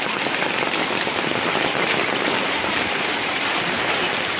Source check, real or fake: fake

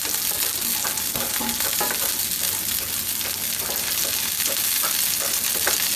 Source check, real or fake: real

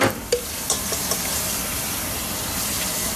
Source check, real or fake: fake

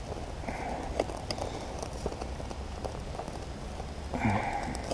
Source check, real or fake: real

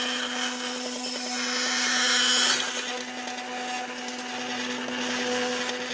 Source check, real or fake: real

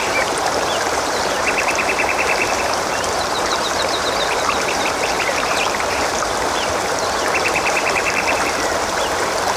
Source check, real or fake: fake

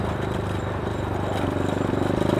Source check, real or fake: fake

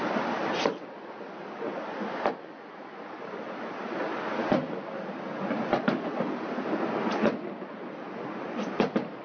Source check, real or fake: real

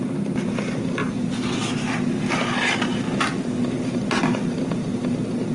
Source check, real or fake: real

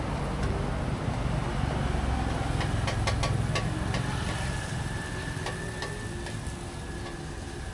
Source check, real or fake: real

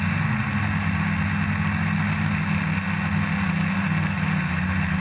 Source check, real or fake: real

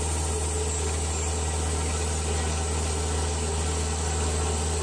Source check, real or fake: real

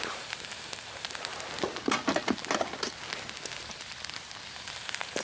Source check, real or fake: real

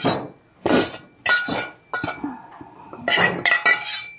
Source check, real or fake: real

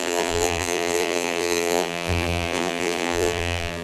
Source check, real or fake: fake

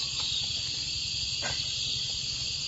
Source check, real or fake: real